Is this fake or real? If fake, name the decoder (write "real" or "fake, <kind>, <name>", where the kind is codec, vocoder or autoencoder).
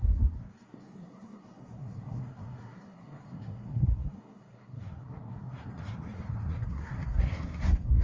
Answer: fake, codec, SNAC